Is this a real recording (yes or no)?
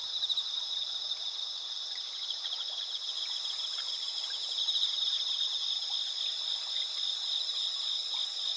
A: yes